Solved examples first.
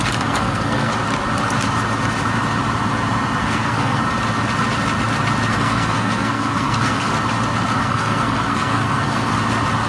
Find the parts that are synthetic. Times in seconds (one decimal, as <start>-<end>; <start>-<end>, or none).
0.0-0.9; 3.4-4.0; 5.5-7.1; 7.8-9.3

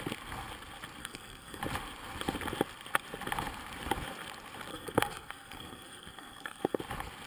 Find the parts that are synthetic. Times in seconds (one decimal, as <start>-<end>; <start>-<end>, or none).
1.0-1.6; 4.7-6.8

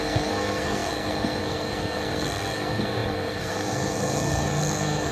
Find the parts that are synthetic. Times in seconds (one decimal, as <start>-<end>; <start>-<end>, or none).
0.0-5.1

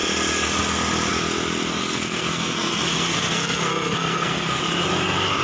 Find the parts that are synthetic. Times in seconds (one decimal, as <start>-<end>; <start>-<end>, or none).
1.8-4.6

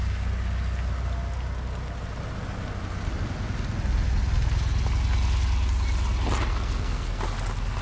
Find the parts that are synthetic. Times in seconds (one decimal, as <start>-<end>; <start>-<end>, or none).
6.5-7.2